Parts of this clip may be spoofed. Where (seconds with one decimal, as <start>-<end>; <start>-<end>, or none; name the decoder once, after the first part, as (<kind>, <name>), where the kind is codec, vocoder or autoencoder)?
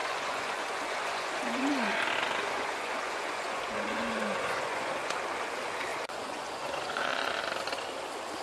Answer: 0.0-2.0 (vocoder, Vocos); 2.4-5.2; 5.9-7.3